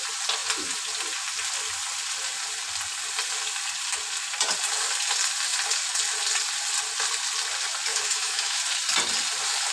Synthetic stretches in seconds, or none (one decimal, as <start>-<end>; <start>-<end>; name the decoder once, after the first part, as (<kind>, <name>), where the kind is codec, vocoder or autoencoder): 7.9-8.6 (autoencoder, DAC-VAE)